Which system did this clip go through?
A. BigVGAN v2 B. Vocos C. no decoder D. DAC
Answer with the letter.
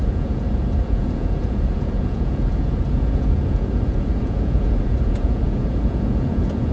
B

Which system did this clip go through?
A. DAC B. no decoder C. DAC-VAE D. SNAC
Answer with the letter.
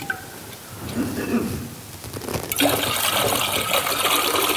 B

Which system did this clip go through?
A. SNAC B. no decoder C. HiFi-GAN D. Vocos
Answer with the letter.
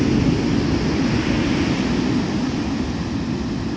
B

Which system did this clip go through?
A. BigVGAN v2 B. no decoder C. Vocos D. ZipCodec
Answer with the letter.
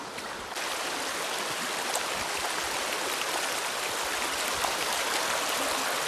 B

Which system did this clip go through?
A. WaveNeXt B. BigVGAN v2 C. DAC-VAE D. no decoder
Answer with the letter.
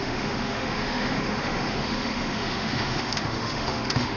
C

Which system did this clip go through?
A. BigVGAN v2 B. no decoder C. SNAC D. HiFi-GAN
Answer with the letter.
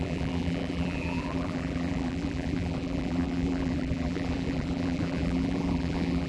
A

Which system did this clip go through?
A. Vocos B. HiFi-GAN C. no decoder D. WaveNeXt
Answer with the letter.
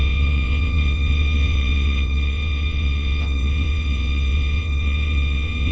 D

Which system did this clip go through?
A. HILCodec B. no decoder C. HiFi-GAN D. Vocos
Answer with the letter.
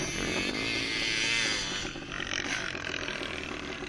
B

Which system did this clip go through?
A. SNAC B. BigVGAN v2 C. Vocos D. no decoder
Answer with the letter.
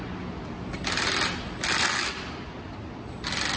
D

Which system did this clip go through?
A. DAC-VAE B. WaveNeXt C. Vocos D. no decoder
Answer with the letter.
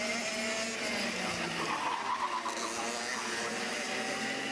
D